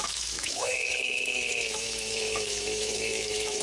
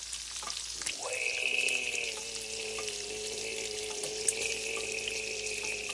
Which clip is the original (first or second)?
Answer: second